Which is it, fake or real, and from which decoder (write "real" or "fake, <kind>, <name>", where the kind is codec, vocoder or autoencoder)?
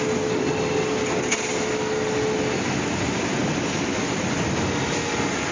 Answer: real